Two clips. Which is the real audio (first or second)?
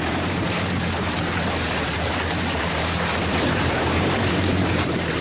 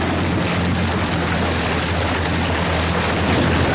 second